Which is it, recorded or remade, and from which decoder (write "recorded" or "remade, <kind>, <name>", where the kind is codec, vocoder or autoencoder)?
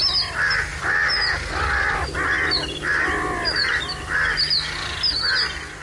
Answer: recorded